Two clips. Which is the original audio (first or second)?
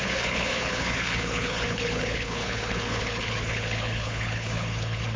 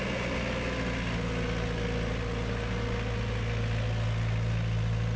second